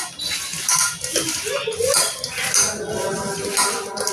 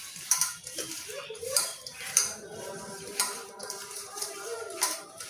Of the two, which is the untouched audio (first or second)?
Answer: first